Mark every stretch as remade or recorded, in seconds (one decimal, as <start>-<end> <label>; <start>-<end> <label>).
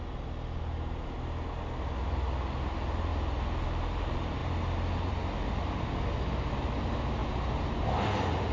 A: 0.0-8.5 recorded